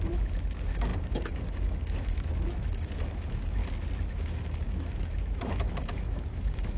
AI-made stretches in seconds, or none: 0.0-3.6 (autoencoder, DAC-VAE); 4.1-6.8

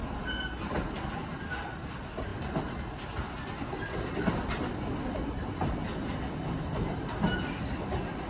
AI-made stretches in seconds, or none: none

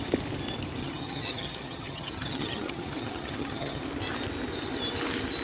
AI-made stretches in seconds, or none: 0.8-3.8 (vocoder, HiFi-GAN)

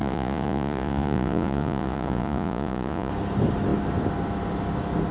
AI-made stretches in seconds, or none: 0.0-3.1 (vocoder, Vocos)